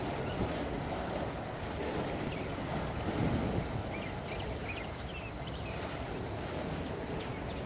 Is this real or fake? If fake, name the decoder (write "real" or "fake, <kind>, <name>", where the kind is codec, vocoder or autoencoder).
real